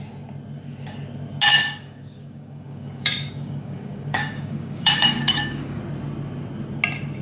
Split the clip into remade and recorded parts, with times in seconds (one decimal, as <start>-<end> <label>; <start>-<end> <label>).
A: 0.0-1.5 recorded; 1.5-5.8 remade; 5.8-7.2 recorded